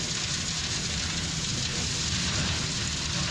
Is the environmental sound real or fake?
real